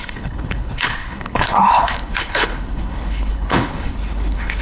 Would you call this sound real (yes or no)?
no